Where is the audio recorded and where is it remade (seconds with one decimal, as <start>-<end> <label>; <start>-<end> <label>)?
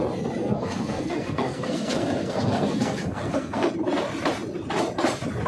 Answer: 0.0-0.4 recorded; 0.4-3.7 remade; 3.7-5.5 recorded